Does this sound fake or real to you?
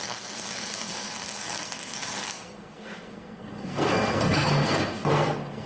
fake